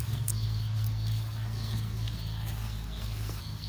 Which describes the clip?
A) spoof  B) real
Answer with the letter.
A